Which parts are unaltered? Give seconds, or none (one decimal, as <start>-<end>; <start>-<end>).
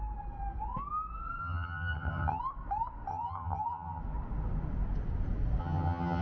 0.0-1.4; 2.4-3.1; 4.0-5.6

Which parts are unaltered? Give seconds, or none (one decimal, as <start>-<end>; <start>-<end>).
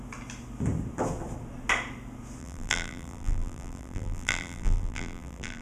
0.0-2.4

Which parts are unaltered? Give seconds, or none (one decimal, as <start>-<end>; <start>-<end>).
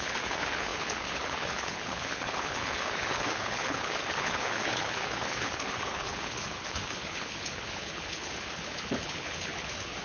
none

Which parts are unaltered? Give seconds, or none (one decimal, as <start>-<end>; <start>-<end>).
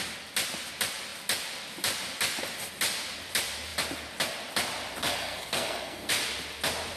0.0-5.0; 6.1-7.0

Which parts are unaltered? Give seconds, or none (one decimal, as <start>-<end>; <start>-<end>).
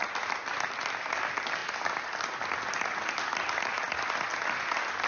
0.0-5.1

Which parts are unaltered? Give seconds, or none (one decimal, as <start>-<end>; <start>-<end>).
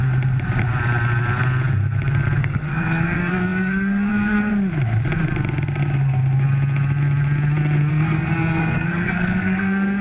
0.0-2.4; 4.5-7.9